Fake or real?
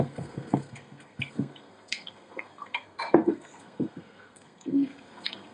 fake